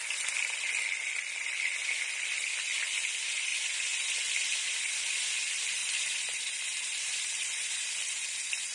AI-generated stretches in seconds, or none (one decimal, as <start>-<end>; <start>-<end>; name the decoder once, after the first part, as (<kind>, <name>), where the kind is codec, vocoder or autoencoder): 5.8-7.9 (vocoder, BigVGAN v2)

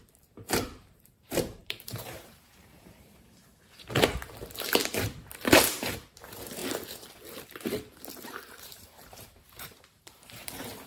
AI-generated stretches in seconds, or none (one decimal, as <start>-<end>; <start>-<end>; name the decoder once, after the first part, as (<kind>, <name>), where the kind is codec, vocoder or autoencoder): 0.0-3.5 (vocoder, BigVGAN v2); 5.8-6.6; 8.1-10.9

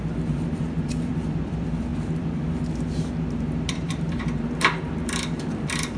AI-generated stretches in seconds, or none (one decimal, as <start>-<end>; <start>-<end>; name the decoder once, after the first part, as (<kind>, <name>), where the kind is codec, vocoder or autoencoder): 0.0-1.9 (vocoder, BigVGAN v2); 3.7-6.0

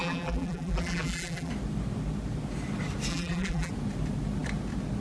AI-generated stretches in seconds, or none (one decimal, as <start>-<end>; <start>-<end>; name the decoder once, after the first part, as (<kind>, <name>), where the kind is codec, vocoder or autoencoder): 0.0-1.5 (vocoder, BigVGAN v2); 3.1-3.7

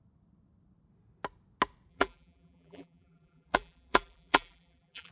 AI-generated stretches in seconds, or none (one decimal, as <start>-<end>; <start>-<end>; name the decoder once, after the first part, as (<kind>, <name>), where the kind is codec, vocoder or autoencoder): 1.9-5.1 (vocoder, BigVGAN v2)

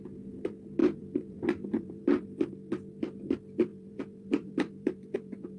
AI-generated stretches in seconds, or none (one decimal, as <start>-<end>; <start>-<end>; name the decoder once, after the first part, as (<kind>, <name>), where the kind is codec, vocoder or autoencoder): 0.8-2.5 (vocoder, BigVGAN v2); 3.7-5.6